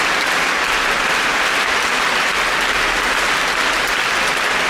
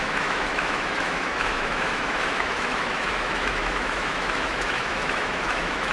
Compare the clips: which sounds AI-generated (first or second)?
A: second